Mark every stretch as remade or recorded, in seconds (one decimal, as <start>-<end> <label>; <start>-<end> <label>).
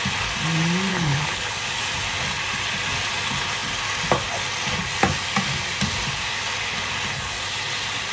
0.0-0.9 recorded; 0.9-1.5 remade; 1.5-8.1 recorded